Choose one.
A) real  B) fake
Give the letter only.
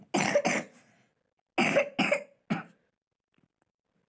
A